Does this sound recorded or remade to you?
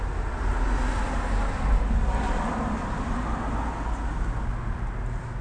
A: recorded